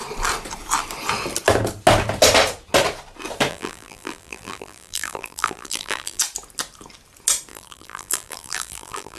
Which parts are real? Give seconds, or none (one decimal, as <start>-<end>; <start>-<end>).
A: 0.0-3.5; 6.2-7.5